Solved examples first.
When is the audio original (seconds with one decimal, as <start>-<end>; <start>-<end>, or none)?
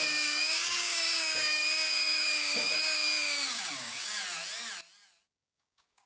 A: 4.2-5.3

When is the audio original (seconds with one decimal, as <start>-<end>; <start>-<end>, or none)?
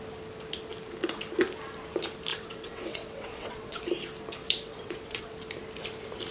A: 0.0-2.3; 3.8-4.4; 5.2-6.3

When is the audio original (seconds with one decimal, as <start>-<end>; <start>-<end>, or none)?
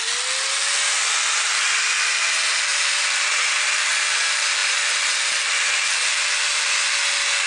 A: 0.0-2.7; 3.4-7.5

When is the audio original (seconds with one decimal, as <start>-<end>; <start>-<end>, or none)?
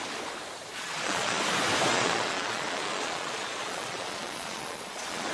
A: 0.0-0.7; 1.4-1.9